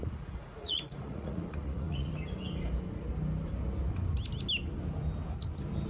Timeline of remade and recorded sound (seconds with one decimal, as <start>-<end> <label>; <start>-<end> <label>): 0.0-2.1 remade; 2.1-5.9 recorded